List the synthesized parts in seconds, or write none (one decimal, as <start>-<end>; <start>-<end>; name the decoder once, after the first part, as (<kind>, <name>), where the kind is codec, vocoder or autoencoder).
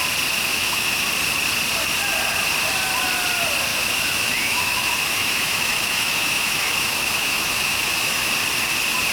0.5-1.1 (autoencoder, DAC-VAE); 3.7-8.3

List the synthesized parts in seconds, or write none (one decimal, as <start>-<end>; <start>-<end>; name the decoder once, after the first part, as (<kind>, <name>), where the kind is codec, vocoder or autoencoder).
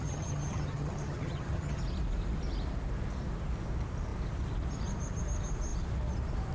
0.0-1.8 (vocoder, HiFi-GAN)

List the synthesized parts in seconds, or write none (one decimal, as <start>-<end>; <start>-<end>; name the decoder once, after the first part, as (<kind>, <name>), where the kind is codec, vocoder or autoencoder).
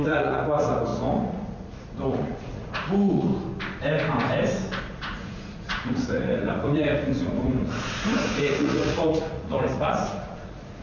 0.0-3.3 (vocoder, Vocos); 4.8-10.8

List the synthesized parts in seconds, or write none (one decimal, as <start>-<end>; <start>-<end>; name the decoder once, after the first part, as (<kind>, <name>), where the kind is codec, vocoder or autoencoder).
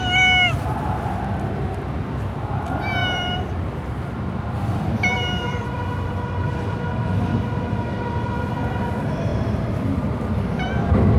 3.0-7.7 (vocoder, BigVGAN v2); 9.3-10.7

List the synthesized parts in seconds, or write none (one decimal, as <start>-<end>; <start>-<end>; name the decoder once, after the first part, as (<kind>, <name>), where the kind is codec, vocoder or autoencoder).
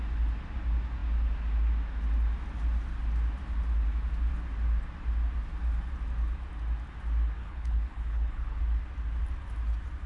7.4-8.6 (codec, HILCodec)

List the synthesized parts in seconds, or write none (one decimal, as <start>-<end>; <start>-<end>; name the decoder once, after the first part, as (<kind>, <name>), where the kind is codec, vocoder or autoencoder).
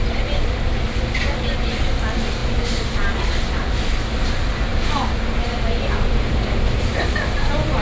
none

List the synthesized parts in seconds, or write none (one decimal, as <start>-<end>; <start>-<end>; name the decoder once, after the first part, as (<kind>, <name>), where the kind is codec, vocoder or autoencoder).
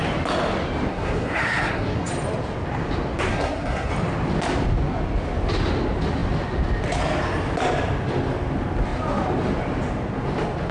0.9-2.1 (codec, SNAC); 3.3-3.9